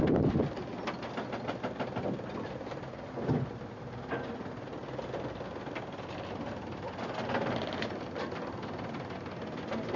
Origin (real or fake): real